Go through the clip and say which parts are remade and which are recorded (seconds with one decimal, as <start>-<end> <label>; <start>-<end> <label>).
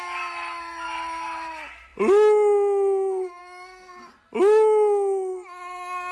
0.0-6.1 recorded